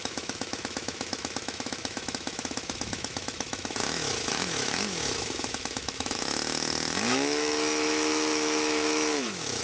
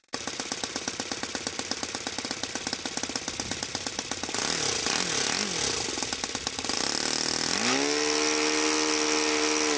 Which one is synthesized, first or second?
first